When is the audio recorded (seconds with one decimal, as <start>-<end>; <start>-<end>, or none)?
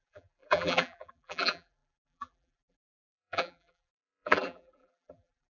none